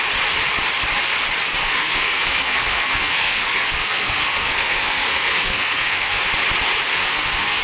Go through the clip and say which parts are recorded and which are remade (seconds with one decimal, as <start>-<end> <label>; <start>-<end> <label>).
0.0-1.6 recorded; 1.6-6.2 remade; 6.2-6.9 recorded; 6.9-7.6 remade

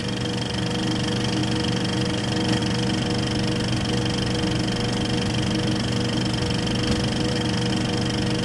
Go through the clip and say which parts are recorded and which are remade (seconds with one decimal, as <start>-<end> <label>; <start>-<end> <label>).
0.0-8.4 recorded